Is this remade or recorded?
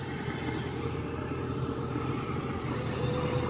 remade